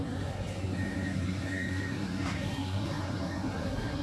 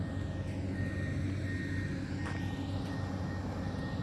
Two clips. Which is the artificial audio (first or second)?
first